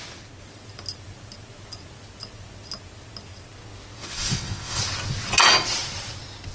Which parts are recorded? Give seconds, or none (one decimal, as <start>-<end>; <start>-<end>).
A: 0.0-4.0; 4.8-6.5